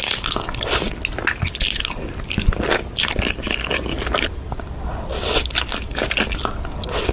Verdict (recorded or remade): recorded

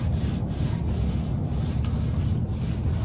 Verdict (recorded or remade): recorded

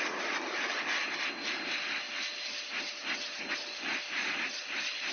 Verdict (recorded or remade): recorded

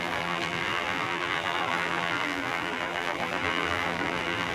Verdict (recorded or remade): remade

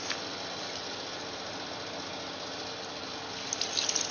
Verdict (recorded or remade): recorded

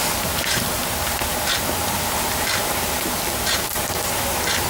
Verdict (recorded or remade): recorded